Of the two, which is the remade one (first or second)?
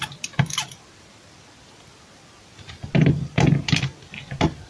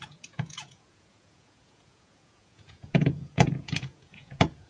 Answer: second